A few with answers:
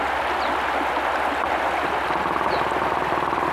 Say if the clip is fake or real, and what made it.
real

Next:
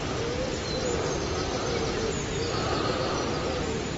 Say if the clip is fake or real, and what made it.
real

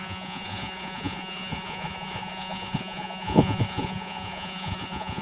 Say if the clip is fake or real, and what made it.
fake, vocoder, Vocos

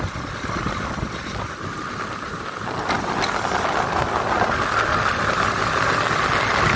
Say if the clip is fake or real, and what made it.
real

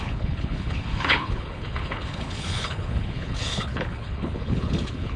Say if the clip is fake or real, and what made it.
fake, codec, HILCodec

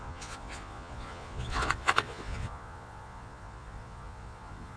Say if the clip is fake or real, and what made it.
fake, vocoder, Vocos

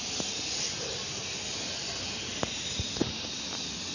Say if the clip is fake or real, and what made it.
real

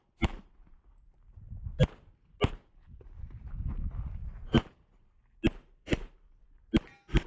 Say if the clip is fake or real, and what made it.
real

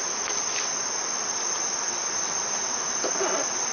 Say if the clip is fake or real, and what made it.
real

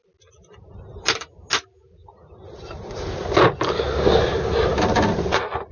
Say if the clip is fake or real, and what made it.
real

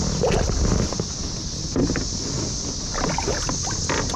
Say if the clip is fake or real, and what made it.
real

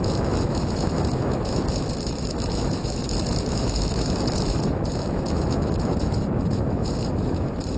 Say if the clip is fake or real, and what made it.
fake, autoencoder, DAC-VAE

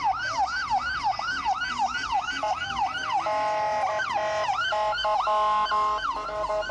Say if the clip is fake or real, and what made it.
real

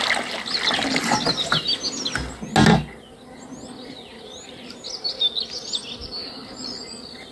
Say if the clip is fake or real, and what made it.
real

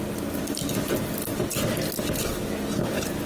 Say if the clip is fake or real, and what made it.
real